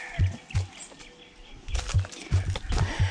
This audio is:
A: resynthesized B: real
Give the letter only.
B